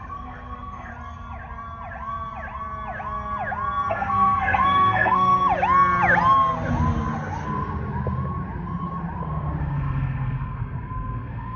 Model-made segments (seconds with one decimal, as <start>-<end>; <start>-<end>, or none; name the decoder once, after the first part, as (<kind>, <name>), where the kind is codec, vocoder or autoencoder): 0.0-0.9 (codec, SNAC); 3.9-5.3; 9.6-11.6